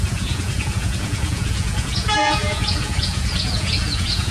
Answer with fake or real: fake